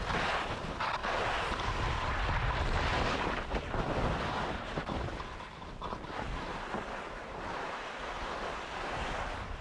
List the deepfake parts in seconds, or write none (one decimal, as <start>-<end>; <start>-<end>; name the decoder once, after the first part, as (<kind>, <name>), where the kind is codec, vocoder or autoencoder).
none